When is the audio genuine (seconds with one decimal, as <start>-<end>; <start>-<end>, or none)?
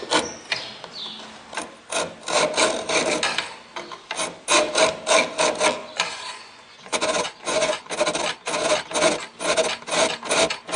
0.0-5.8; 7.9-10.8